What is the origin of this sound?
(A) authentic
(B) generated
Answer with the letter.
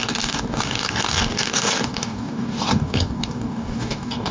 B